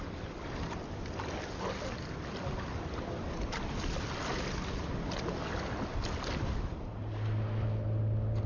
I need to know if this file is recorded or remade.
recorded